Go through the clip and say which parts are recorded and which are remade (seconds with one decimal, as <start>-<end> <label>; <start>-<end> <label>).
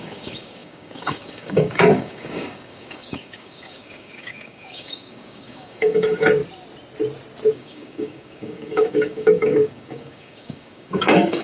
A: 0.0-6.4 remade; 6.4-7.5 recorded; 7.5-11.4 remade